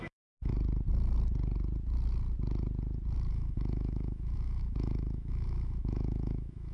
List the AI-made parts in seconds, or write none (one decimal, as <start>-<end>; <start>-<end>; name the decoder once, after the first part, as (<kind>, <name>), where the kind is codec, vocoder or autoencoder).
0.0-0.5 (autoencoder, DAC-VAE); 3.3-6.7